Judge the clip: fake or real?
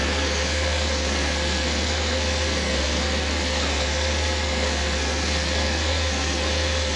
fake